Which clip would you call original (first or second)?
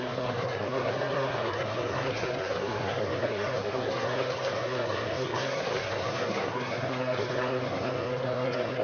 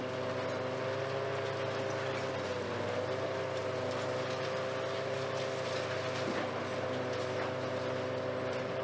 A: second